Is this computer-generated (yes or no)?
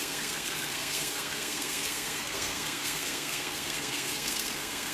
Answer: yes